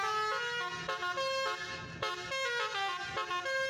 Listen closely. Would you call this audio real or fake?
real